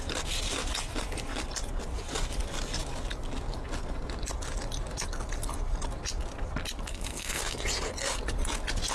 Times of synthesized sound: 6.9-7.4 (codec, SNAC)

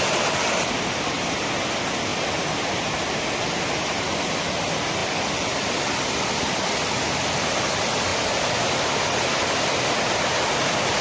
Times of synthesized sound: 5.0-6.3 (vocoder, BigVGAN v2); 8.1-10.2

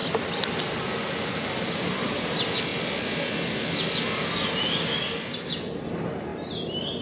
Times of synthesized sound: none

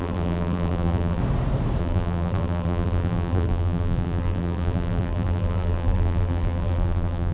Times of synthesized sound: 0.0-1.2 (vocoder, BigVGAN v2); 1.8-7.3

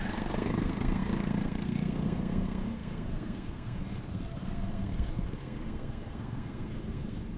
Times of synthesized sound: 0.0-7.4 (codec, SNAC)

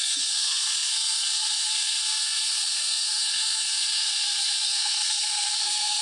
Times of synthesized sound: 0.0-6.0 (codec, SNAC)